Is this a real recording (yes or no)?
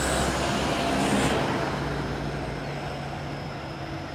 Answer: yes